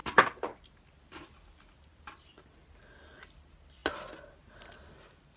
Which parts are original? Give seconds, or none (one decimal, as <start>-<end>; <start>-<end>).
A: 0.0-5.4

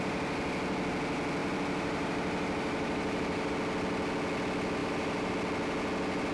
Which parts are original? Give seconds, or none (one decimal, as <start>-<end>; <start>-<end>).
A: 0.0-1.4; 3.5-4.8; 5.3-6.3